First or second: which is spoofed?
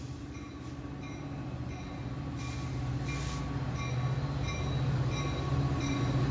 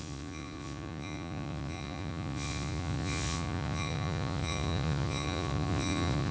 second